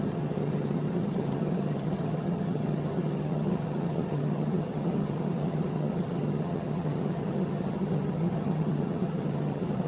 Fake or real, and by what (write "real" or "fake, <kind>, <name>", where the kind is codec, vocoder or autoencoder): fake, vocoder, HiFi-GAN